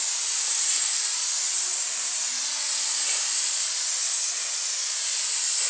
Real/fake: real